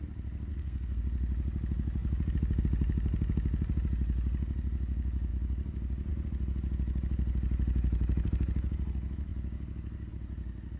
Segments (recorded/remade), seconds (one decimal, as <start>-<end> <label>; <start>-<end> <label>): 0.0-0.5 recorded; 0.5-1.0 remade; 1.0-10.8 recorded

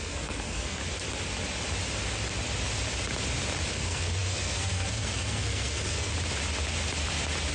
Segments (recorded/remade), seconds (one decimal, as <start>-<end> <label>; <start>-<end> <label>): 0.0-0.8 remade; 0.8-3.7 recorded; 3.7-6.1 remade; 6.1-7.5 recorded